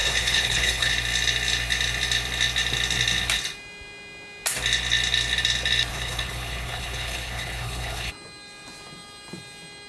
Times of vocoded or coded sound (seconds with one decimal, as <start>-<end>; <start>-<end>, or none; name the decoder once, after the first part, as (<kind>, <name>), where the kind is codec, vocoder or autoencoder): 0.0-0.9 (codec, HILCodec); 5.9-8.1